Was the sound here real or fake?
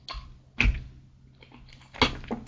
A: real